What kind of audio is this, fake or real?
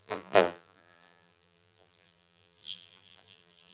fake